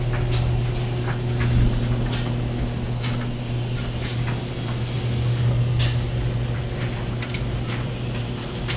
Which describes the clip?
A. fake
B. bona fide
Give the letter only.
B